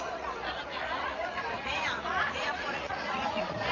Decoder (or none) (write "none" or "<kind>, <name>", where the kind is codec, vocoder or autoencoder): vocoder, Vocos